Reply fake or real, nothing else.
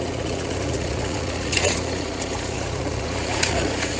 fake